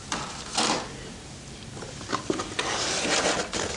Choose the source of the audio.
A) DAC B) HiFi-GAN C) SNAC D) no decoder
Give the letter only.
D